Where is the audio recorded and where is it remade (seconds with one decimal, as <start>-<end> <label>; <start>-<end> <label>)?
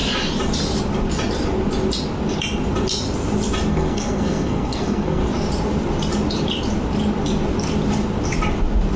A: 0.0-3.7 recorded; 3.7-5.2 remade; 5.2-9.0 recorded